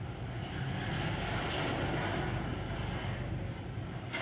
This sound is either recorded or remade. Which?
recorded